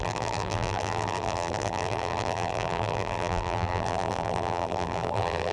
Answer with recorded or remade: remade